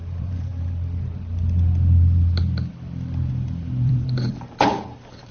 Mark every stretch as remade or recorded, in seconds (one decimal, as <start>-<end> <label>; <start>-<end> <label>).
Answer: 0.0-0.5 remade; 0.5-3.3 recorded; 3.3-5.3 remade